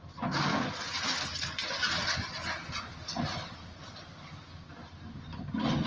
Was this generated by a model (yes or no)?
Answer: no